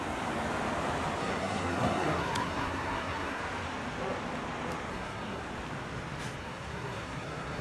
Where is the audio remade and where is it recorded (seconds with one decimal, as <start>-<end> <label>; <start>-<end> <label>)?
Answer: 0.0-1.2 recorded; 1.2-3.4 remade; 3.4-4.9 recorded; 4.9-5.4 remade; 5.4-6.4 recorded; 6.4-7.6 remade